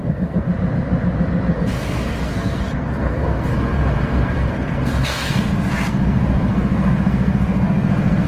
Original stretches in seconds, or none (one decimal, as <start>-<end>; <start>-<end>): 0.5-1.5